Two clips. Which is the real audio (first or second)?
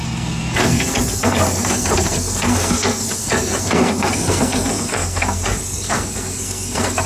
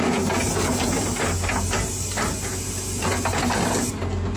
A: second